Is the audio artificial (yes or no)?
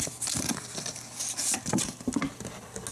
no